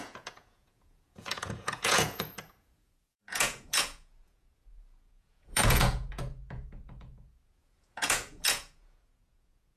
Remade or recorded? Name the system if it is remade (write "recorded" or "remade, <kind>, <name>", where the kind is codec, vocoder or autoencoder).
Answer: remade, vocoder, Vocos